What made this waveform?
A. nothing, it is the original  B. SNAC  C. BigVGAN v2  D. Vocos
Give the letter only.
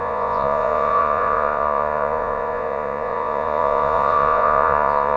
D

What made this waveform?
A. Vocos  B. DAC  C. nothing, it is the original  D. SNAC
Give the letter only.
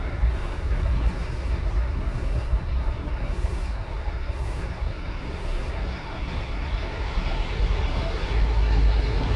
D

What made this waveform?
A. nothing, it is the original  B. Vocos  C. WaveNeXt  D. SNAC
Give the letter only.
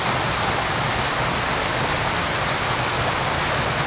A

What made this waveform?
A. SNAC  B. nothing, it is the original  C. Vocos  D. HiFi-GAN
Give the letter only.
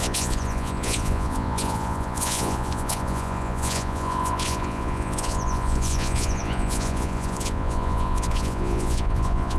C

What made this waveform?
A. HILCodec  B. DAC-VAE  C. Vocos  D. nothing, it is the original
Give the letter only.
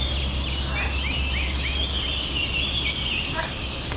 D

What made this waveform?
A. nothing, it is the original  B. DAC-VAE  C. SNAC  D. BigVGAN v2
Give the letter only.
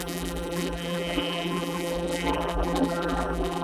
D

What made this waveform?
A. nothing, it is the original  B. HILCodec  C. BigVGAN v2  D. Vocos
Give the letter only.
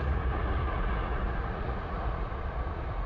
D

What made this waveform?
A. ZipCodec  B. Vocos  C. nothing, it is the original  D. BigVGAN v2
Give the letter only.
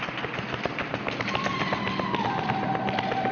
C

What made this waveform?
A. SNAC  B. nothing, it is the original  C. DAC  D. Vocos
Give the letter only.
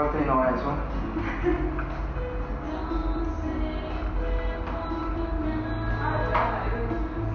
B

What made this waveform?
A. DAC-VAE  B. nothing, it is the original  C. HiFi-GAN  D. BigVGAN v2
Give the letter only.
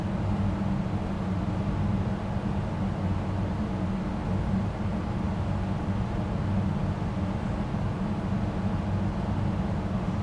B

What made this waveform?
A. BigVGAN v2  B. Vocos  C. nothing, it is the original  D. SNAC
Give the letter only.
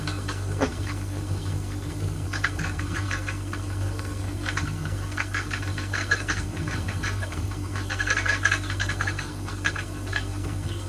D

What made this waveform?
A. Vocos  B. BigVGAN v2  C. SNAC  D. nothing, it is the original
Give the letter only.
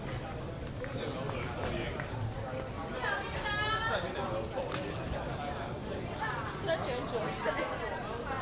D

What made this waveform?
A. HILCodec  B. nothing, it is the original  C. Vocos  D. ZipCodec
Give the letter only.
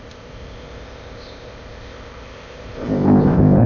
D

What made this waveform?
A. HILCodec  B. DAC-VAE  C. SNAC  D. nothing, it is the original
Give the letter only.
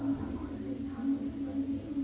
D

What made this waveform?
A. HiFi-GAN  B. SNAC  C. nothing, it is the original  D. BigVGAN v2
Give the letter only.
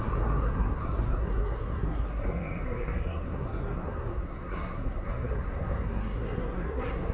B